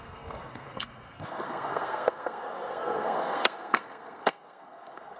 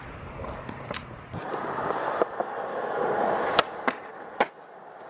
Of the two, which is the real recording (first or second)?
second